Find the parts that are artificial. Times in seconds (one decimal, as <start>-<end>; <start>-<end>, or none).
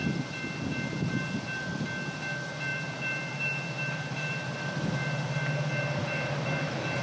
2.7-7.0